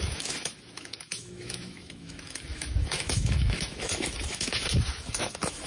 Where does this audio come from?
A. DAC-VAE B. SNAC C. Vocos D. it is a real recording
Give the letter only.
A